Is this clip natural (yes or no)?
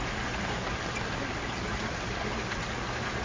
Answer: yes